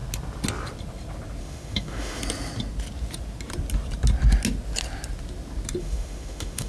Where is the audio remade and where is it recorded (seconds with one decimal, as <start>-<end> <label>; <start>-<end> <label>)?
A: 0.0-1.4 recorded; 1.4-2.2 remade; 2.2-5.8 recorded; 5.8-6.7 remade